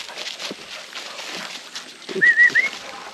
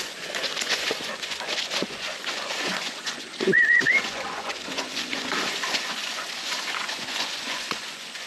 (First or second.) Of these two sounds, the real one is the first